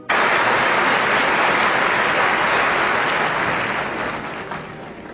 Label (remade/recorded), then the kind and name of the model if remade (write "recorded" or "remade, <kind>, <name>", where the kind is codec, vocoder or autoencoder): recorded